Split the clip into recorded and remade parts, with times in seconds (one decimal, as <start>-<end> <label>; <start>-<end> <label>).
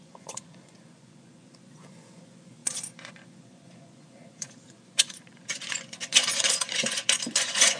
0.0-7.8 remade